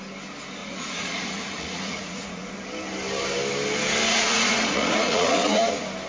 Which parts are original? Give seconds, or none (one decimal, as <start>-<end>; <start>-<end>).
0.0-0.6; 2.5-4.1; 5.6-6.1